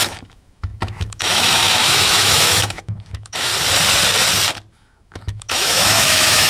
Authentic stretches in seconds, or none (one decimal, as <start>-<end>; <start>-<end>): 3.5-4.7